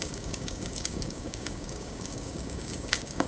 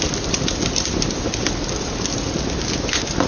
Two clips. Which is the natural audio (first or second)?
second